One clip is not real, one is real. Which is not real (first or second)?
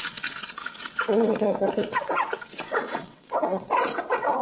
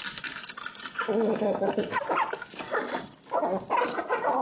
first